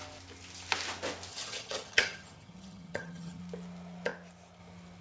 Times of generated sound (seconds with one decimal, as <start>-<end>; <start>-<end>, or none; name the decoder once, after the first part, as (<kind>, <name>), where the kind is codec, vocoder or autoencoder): 1.3-3.4 (vocoder, HiFi-GAN)